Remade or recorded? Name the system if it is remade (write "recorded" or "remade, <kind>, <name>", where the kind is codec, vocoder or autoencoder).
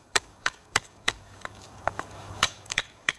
remade, codec, DAC